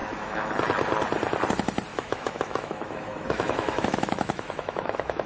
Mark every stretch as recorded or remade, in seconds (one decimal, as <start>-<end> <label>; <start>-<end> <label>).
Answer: 0.0-0.5 remade; 0.5-1.9 recorded; 1.9-5.3 remade